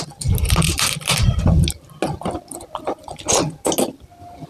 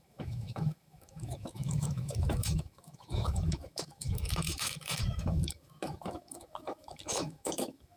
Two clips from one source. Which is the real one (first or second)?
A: first